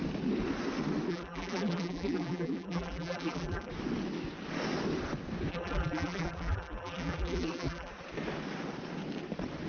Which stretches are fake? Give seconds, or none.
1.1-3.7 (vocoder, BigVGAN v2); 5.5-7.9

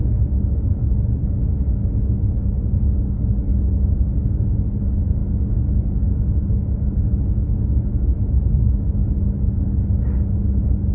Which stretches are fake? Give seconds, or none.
1.5-2.6 (autoencoder, DAC-VAE); 5.2-9.0

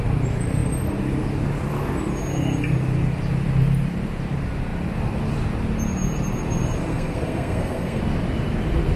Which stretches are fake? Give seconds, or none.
6.9-8.0 (codec, SNAC)